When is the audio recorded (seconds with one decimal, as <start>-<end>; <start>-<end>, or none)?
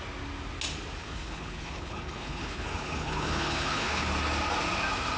0.0-1.0; 4.1-5.2